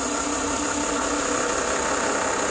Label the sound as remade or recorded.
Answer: recorded